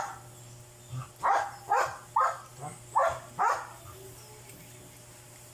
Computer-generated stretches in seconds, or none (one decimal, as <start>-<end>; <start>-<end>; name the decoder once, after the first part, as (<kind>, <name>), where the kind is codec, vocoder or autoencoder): none